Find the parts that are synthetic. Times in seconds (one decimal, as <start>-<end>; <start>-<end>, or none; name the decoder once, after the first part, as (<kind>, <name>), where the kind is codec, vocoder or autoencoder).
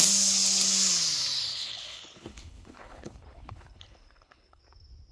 1.5-4.6 (codec, HILCodec)